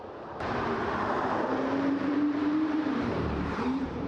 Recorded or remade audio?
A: remade